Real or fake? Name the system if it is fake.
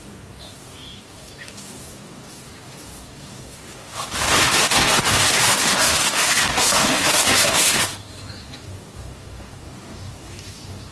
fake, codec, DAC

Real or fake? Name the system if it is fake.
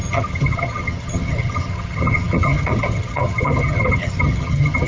fake, vocoder, HiFi-GAN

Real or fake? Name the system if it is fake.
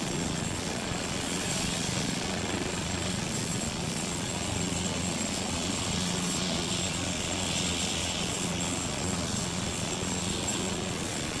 fake, vocoder, Vocos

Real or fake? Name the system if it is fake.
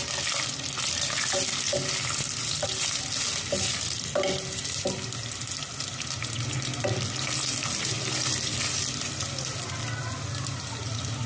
real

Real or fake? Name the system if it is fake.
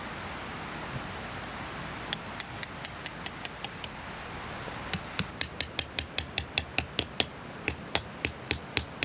real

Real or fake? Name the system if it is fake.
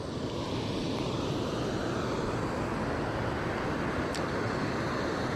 real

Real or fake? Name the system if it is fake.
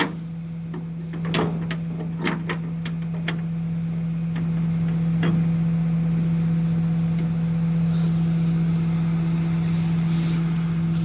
real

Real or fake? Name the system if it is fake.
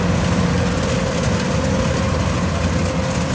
real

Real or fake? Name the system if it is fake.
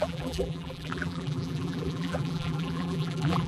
fake, vocoder, BigVGAN v2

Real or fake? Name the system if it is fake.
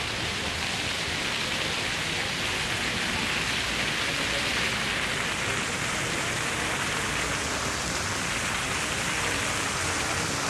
real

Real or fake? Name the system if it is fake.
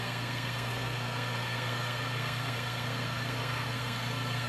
fake, codec, SNAC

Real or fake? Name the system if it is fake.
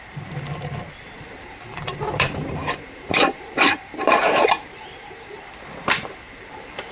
fake, vocoder, BigVGAN v2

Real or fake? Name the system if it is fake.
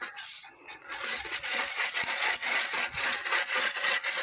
fake, vocoder, Vocos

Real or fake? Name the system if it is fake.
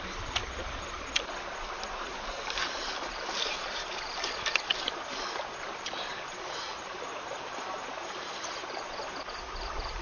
fake, vocoder, BigVGAN v2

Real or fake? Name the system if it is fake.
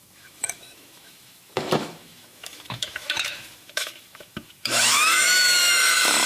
fake, autoencoder, DAC-VAE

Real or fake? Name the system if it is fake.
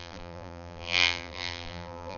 fake, vocoder, BigVGAN v2